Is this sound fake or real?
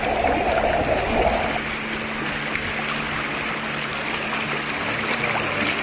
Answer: real